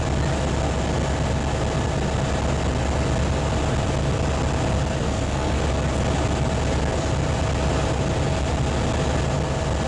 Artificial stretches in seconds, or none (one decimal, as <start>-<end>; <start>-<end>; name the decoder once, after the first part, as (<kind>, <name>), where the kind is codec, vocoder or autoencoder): 5.0-5.6 (codec, SNAC)